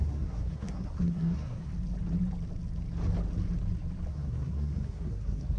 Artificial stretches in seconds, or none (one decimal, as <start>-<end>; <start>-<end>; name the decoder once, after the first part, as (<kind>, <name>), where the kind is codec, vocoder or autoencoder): 0.0-1.7 (codec, SNAC); 4.1-5.6